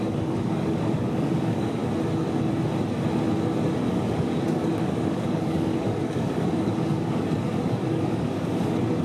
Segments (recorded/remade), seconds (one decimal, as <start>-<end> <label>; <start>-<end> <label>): 0.0-1.8 remade; 1.8-3.9 recorded; 3.9-9.0 remade